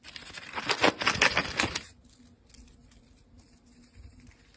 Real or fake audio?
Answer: real